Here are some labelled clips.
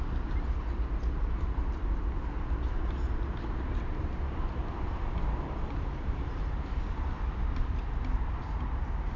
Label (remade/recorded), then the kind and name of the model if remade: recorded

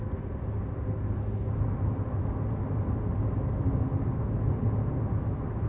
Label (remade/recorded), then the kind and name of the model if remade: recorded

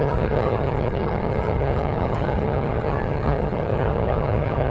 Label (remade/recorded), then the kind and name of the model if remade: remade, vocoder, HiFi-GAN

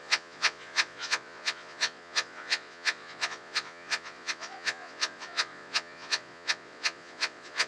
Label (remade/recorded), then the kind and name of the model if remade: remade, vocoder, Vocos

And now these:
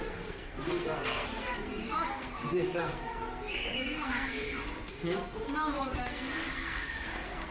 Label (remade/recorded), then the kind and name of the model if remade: remade, codec, SNAC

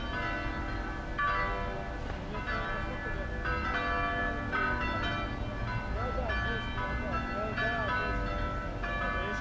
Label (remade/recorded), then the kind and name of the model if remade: recorded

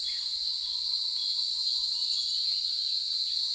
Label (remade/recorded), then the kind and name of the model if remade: recorded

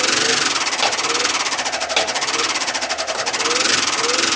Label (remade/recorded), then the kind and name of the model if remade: recorded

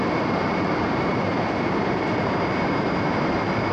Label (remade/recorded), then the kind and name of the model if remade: remade, vocoder, BigVGAN v2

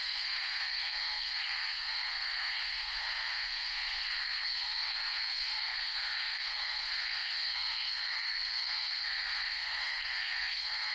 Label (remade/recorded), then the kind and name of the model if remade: remade, codec, SNAC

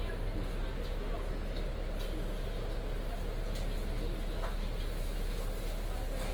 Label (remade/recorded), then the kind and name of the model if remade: recorded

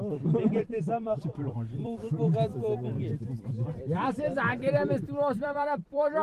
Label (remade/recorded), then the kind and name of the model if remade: remade, vocoder, BigVGAN v2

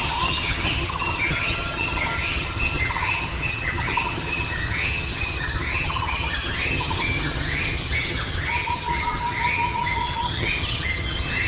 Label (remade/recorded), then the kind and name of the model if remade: remade, vocoder, HiFi-GAN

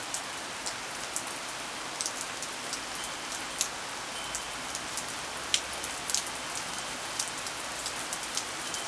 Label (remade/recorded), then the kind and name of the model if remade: recorded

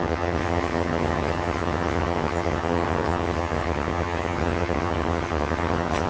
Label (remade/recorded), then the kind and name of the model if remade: remade, vocoder, HiFi-GAN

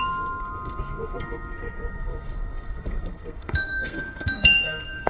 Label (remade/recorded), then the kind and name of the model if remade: remade, codec, SNAC